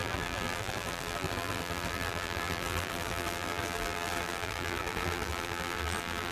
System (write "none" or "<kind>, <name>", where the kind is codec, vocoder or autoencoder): vocoder, BigVGAN v2